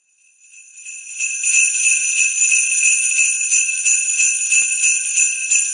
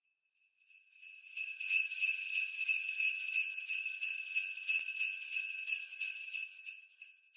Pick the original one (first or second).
first